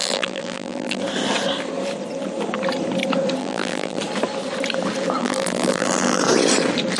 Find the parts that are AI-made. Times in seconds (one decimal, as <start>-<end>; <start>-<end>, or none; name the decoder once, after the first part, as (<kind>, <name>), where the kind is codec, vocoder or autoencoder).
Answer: 0.0-1.0 (vocoder, BigVGAN v2); 3.4-4.0; 5.2-6.2